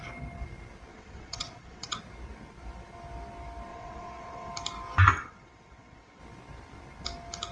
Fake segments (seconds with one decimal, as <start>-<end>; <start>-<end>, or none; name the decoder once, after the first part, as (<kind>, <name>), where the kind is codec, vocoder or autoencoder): 0.9-2.0 (vocoder, WaveNeXt); 3.7-4.5; 5.1-6.2